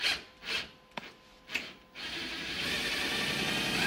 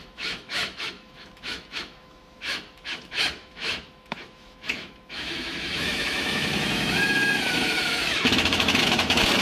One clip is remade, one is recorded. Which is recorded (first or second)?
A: first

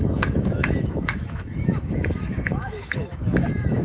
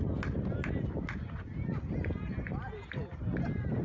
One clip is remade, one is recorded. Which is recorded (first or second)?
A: second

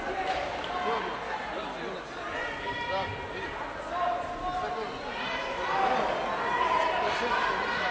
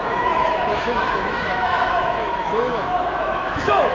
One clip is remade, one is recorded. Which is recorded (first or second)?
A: first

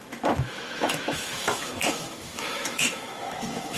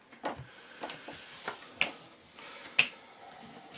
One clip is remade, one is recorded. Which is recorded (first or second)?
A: second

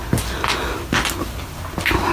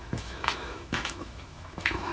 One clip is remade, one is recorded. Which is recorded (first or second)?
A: first